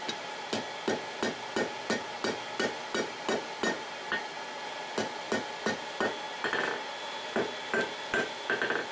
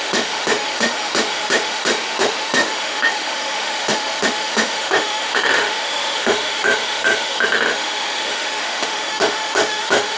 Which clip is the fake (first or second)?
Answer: second